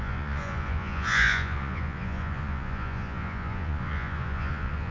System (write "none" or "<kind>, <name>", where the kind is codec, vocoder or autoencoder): vocoder, Vocos